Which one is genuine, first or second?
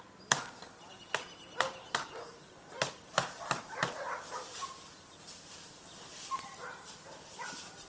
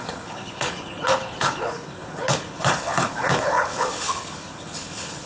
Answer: first